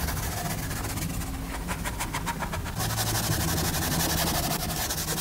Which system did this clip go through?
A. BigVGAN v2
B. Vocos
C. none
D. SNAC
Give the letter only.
C